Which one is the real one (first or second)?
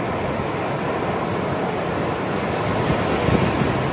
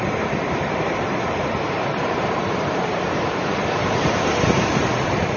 first